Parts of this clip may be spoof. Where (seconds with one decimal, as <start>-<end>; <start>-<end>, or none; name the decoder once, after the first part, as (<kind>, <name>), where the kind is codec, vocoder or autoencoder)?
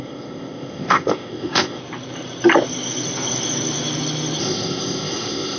0.0-1.8 (codec, ZipCodec); 4.4-5.6